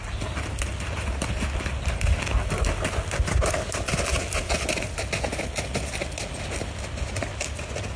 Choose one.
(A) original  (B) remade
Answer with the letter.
A